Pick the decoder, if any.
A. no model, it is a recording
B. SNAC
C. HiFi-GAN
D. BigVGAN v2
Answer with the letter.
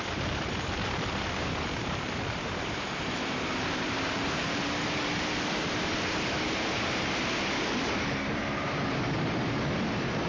D